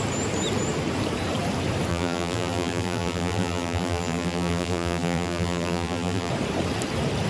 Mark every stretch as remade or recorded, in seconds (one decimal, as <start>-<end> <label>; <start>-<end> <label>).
0.0-1.9 recorded; 1.9-6.3 remade; 6.3-7.3 recorded